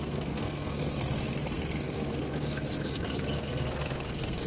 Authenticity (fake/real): fake